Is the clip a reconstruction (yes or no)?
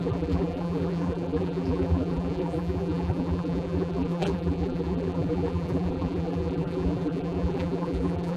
yes